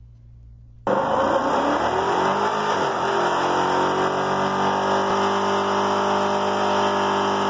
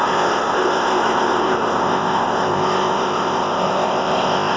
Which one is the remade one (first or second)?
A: second